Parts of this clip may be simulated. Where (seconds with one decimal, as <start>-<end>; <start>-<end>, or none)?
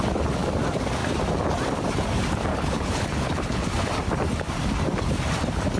2.5-3.6